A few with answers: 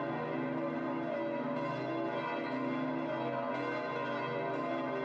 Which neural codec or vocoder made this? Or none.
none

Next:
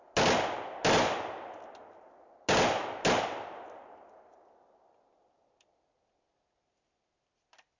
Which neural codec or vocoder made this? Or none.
none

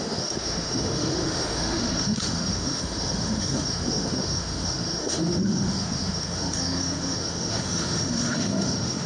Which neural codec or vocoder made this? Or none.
autoencoder, DAC-VAE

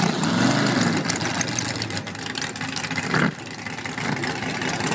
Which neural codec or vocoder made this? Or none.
none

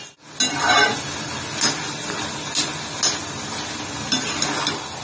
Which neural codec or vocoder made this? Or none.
none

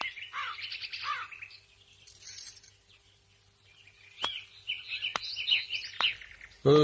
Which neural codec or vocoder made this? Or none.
none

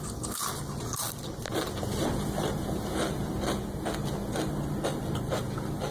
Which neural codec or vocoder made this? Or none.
none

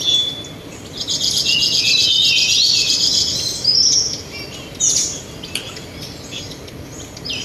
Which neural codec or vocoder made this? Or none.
none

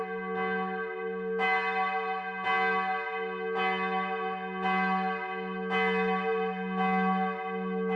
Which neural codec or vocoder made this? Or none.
none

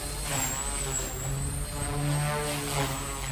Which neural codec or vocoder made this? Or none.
none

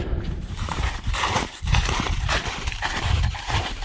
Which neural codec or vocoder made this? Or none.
vocoder, BigVGAN v2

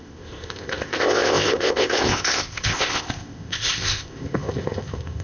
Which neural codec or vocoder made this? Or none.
codec, ZipCodec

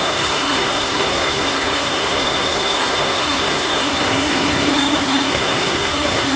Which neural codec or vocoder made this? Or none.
codec, SNAC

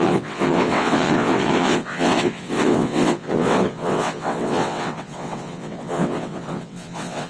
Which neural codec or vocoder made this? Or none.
vocoder, WaveNeXt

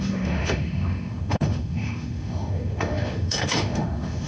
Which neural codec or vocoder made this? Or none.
autoencoder, DAC-VAE